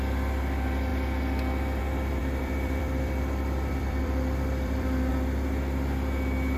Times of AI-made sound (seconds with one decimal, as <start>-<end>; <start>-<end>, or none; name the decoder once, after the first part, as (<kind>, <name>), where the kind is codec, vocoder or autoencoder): 2.2-5.1 (vocoder, BigVGAN v2)